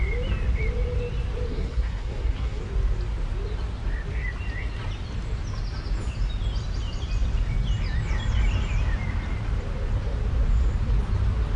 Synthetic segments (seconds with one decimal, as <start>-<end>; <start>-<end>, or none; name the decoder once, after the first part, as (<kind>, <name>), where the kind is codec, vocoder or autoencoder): 1.5-2.6 (codec, SNAC)